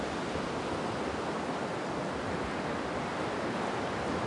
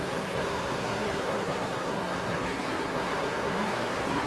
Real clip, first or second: first